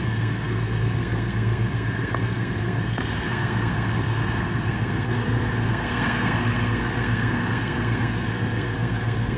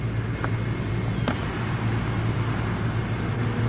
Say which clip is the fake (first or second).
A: first